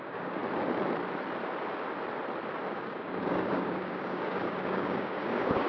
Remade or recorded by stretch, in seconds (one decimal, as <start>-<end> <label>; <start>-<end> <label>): 0.0-0.4 remade; 0.4-2.7 recorded; 2.7-5.7 remade